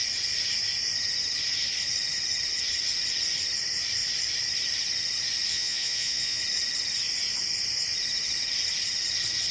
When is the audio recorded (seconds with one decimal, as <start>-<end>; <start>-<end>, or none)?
0.0-5.5; 6.4-9.5